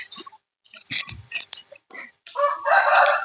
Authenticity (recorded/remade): remade